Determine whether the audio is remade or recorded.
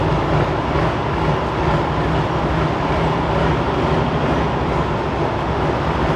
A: recorded